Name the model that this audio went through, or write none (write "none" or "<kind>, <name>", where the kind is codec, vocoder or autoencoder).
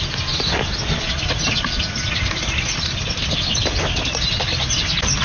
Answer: none